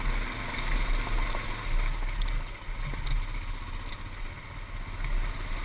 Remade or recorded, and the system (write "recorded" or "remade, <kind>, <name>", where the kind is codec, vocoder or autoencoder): recorded